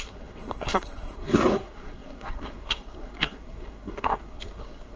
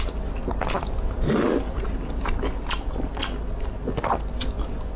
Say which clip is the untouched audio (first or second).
second